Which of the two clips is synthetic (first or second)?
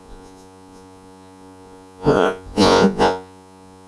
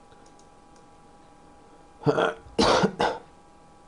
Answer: first